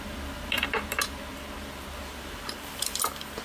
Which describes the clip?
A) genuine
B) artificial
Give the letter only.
B